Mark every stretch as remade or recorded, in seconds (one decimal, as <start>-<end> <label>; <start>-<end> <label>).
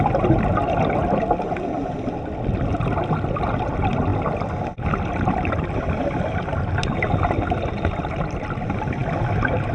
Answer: 0.0-9.7 recorded